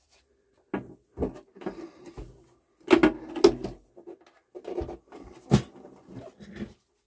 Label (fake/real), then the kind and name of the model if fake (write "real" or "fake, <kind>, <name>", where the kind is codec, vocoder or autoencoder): real